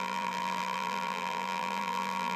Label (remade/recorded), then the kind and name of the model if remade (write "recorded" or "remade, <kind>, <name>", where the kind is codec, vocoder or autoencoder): remade, vocoder, BigVGAN v2